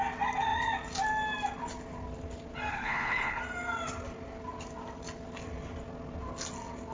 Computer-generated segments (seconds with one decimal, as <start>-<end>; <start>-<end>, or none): 2.7-3.4